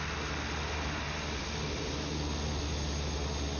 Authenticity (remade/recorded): recorded